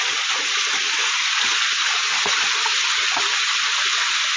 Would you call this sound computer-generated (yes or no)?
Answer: no